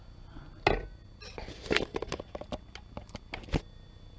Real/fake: real